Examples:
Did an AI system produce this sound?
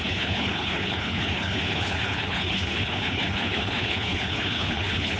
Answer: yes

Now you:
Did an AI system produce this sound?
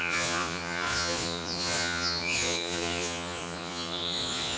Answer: yes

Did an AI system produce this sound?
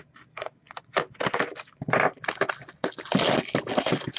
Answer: no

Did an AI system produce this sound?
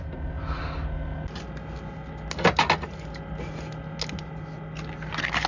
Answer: no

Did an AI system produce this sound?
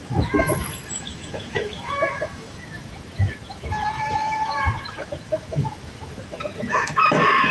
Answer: yes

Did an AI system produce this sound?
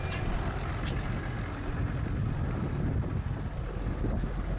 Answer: no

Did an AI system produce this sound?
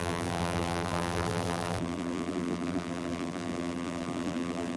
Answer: yes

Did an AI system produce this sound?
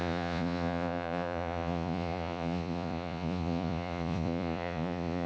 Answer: yes